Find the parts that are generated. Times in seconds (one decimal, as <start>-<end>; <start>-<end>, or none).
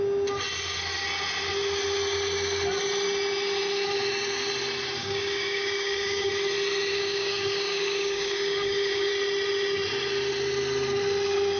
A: 5.0-6.3; 6.9-9.1